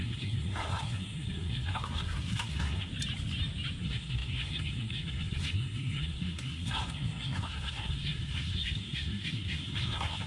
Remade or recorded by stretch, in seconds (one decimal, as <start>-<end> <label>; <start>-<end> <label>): 0.0-2.9 remade; 2.9-3.8 recorded; 3.8-10.3 remade